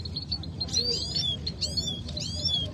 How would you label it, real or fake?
fake